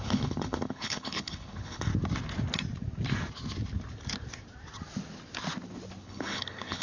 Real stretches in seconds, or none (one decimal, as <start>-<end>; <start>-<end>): 1.9-6.0